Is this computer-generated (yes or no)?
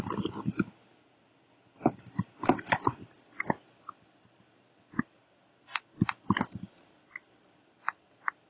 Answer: no